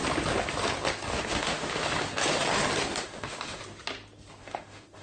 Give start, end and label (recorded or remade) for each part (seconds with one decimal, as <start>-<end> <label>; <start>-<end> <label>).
0.0-1.1 recorded; 1.1-1.9 remade; 1.9-3.0 recorded; 3.0-3.6 remade; 3.6-4.4 recorded; 4.4-5.0 remade